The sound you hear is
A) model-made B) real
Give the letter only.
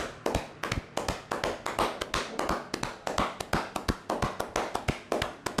B